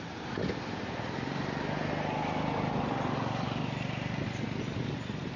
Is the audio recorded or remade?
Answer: recorded